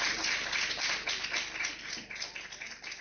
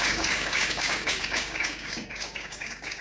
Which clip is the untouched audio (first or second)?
first